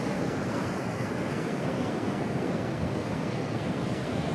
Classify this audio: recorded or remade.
remade